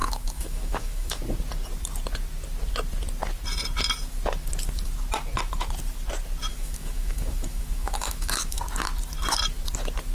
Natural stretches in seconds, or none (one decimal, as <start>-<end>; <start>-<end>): 1.2-6.5; 8.6-10.1